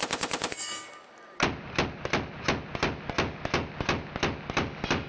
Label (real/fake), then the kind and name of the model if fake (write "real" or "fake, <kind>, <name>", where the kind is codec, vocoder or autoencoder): real